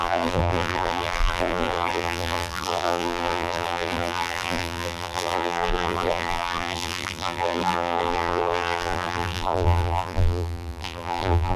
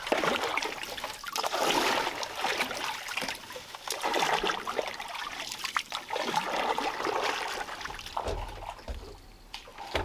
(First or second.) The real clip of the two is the second